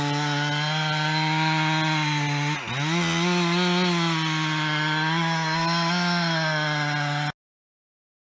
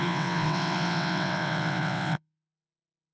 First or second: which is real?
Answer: first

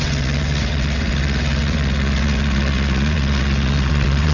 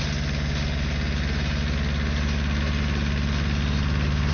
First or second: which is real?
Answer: second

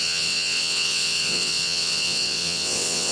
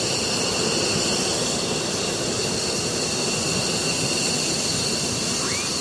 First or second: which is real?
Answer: second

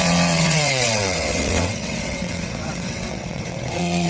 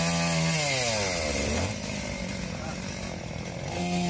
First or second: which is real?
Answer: second